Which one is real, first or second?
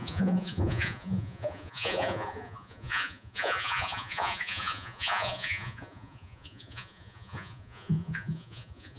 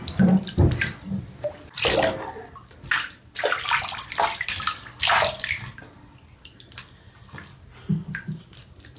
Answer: second